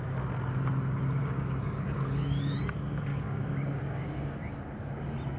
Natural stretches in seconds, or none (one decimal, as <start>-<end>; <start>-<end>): 0.0-1.2; 2.6-3.1; 4.6-5.4